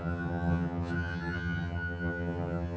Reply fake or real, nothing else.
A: fake